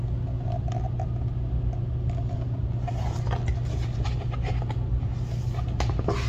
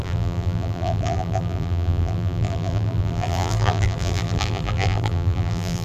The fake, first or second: second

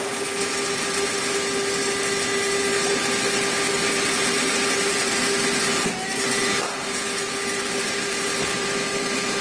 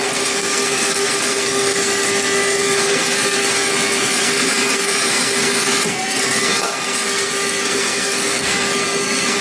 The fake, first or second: second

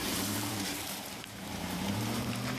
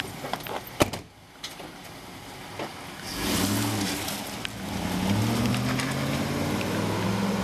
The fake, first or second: first